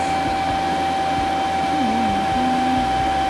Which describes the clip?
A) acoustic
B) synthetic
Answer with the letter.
A